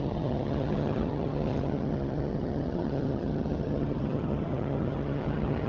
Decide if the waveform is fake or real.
fake